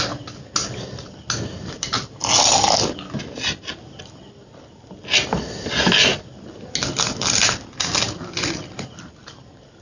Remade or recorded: recorded